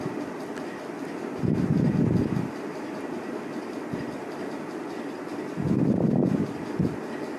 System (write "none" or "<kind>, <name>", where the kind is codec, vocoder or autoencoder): none